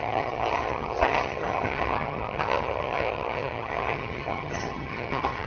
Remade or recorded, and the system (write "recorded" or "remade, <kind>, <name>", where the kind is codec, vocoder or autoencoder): remade, vocoder, HiFi-GAN